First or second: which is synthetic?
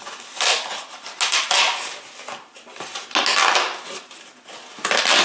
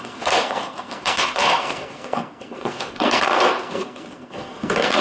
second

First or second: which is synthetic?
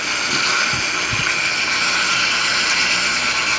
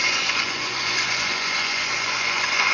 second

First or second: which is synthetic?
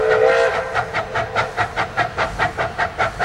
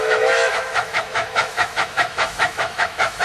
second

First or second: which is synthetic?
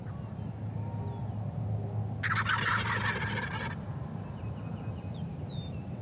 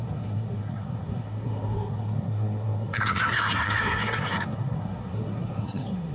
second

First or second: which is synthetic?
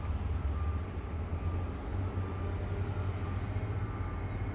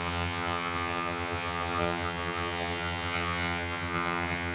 second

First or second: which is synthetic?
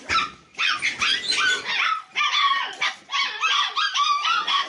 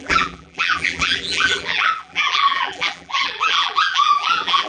second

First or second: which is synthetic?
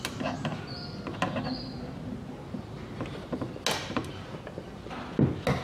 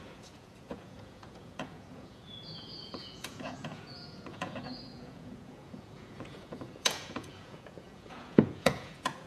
second